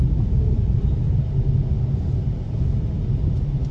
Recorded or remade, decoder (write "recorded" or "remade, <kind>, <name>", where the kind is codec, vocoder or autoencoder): recorded